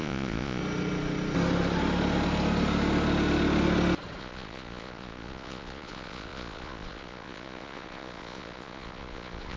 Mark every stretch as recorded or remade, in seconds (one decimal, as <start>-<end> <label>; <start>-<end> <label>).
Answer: 0.0-0.6 remade; 0.6-4.2 recorded; 4.2-9.6 remade